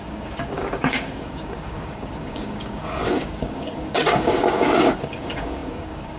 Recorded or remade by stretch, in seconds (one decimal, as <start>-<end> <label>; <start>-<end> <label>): 0.0-6.2 remade